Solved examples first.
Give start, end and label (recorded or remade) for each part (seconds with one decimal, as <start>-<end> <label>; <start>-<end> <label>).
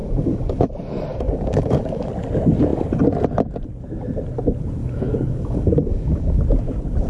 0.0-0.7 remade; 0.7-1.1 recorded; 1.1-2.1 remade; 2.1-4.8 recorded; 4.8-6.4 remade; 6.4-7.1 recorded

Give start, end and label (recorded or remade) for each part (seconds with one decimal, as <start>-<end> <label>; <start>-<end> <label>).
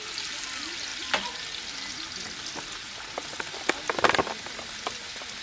0.0-5.4 recorded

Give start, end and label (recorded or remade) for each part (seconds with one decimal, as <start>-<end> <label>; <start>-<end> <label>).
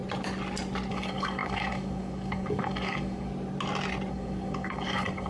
0.0-0.9 recorded; 0.9-3.3 remade; 3.3-4.1 recorded; 4.1-5.3 remade